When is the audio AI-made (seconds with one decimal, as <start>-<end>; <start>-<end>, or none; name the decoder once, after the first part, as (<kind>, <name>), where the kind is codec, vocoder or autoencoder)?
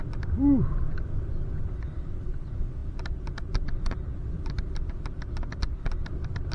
none